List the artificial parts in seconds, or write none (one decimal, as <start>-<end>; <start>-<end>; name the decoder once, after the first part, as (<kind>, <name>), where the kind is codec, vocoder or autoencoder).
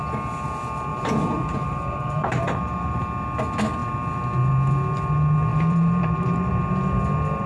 0.9-3.0 (vocoder, BigVGAN v2); 5.5-6.5